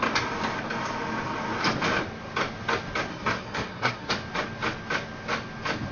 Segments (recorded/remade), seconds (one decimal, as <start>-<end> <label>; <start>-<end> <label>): 0.0-3.1 recorded; 3.1-4.1 remade; 4.1-5.9 recorded